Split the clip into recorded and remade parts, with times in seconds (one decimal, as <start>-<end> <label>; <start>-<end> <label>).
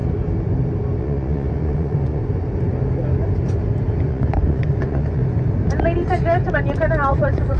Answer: 0.0-1.0 recorded; 1.0-2.2 remade; 2.2-4.0 recorded; 4.0-5.2 remade; 5.2-7.1 recorded; 7.1-7.6 remade